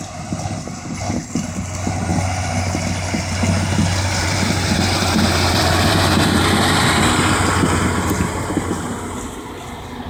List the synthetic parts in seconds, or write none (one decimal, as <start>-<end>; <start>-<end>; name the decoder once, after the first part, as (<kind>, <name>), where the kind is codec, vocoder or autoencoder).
4.2-6.4 (vocoder, BigVGAN v2)